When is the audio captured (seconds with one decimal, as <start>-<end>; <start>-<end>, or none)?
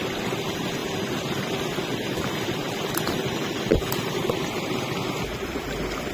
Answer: 0.0-6.1